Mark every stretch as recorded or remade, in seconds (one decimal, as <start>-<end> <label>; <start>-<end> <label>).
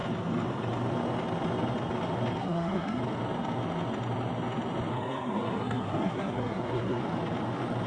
0.0-2.4 recorded; 2.4-3.0 remade; 3.0-4.9 recorded; 4.9-7.0 remade; 7.0-7.9 recorded